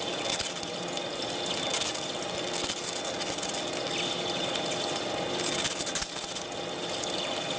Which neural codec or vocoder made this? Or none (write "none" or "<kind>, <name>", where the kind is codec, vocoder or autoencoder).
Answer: none